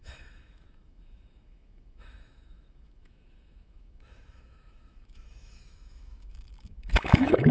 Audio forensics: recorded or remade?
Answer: remade